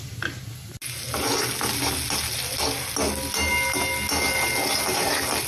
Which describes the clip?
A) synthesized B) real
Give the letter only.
B